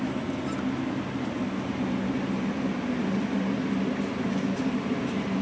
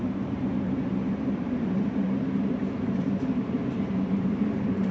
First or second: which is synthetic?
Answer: second